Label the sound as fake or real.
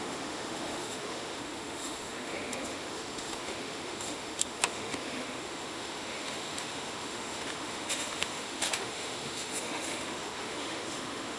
fake